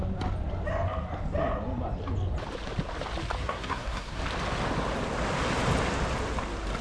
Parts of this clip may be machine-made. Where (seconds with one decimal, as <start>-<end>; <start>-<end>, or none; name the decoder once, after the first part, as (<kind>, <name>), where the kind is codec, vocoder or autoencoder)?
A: 3.4-4.2 (codec, SNAC)